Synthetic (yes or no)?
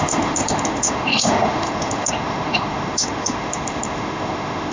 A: yes